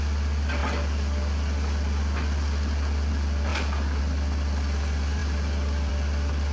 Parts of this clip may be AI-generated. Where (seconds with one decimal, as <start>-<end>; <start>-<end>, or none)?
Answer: none